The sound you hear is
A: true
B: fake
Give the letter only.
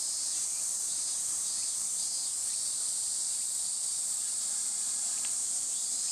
B